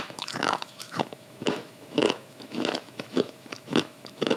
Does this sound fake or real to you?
fake